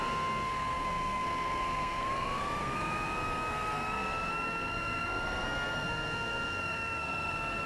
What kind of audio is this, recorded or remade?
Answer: remade